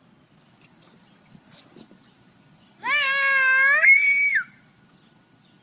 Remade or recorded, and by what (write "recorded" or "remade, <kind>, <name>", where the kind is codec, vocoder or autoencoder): recorded